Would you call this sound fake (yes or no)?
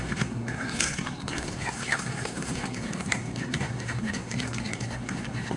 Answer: yes